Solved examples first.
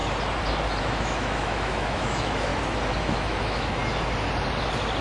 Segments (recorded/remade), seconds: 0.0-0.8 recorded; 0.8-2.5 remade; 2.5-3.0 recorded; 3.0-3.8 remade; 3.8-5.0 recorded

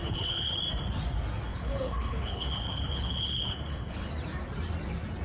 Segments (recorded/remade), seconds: 0.0-0.6 remade; 0.6-1.5 recorded; 1.5-4.1 remade; 4.1-5.2 recorded

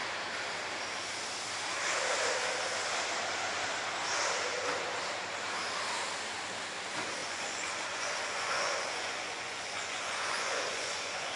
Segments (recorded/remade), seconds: 0.0-7.2 recorded; 7.2-11.4 remade